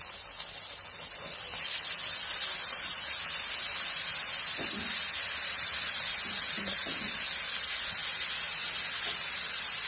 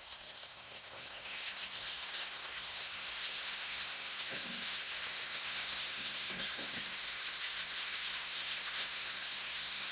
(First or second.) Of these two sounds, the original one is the first